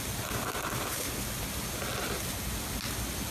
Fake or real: real